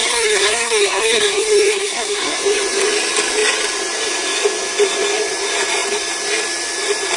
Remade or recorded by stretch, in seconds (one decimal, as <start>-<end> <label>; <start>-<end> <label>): 0.0-2.4 remade; 2.4-7.2 recorded

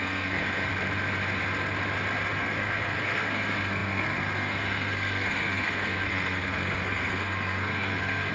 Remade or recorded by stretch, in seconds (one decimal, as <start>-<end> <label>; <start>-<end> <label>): 0.0-0.7 remade; 0.7-2.4 recorded; 2.4-8.3 remade

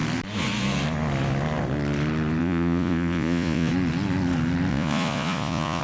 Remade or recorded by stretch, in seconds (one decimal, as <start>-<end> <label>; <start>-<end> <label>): 0.0-2.4 recorded; 2.4-3.7 remade; 3.7-4.7 recorded; 4.7-5.8 remade

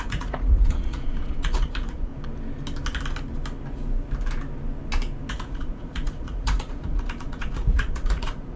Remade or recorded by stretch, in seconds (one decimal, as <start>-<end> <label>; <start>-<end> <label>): 0.0-2.1 remade; 2.1-5.3 recorded; 5.3-8.6 remade

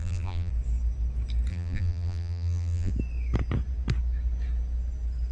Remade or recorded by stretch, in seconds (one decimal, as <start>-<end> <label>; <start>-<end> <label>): 0.0-0.5 remade; 0.5-1.5 recorded; 1.5-2.9 remade; 2.9-5.3 recorded

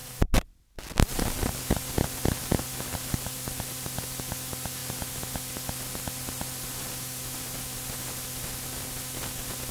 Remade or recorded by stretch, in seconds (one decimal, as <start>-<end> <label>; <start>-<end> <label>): 0.0-1.4 remade; 1.4-9.7 recorded